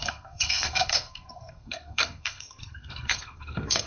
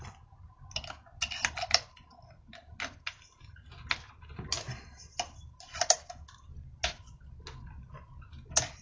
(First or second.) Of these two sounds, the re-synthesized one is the first